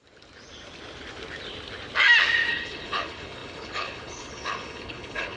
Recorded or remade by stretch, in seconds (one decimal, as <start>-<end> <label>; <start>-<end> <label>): 0.0-2.5 recorded; 2.5-5.4 remade